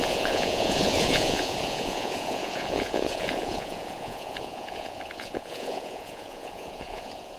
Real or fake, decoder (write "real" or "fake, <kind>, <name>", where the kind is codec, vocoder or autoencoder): fake, vocoder, Vocos